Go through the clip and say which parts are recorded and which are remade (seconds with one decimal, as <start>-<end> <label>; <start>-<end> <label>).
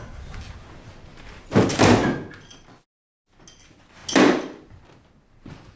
0.0-5.8 recorded